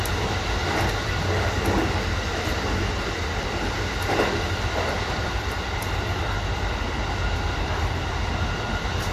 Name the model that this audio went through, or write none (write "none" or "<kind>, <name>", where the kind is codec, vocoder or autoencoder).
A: none